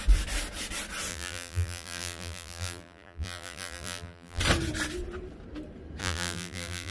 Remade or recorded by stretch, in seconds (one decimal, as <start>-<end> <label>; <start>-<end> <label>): 0.0-1.1 recorded; 1.1-4.4 remade; 4.4-6.0 recorded; 6.0-6.9 remade